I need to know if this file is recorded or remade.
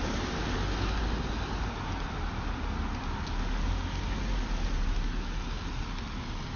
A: recorded